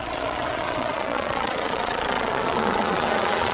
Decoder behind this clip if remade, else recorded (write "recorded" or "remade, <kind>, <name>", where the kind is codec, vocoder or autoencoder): remade, vocoder, Vocos